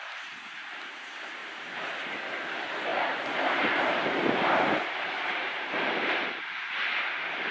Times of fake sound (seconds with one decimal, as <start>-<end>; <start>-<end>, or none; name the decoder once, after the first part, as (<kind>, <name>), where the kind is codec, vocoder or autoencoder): 1.4-2.1 (vocoder, BigVGAN v2); 2.9-6.5